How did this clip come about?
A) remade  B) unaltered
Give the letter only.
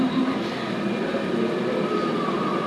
B